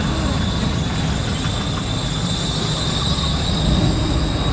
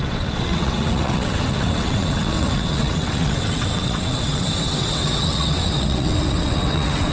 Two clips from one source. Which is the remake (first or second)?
second